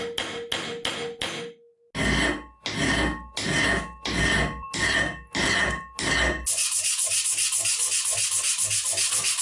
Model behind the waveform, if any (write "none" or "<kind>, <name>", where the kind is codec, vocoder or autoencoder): none